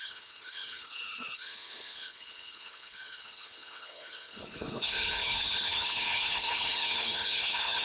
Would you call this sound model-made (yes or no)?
yes